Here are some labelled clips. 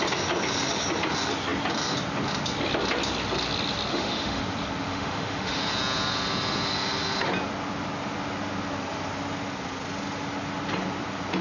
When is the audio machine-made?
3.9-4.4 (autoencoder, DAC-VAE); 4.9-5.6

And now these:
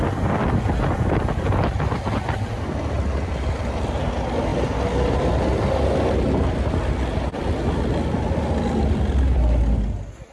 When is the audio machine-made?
none

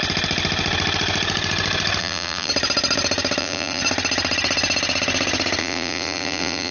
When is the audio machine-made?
2.0-2.5 (vocoder, BigVGAN v2); 3.4-3.8; 5.6-6.7

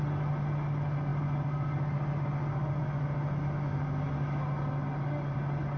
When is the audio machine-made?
none

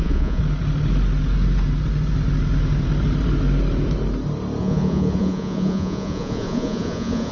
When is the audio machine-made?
0.0-0.4 (vocoder, Vocos); 4.6-7.3